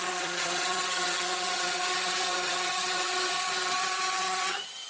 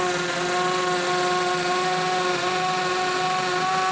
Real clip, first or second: second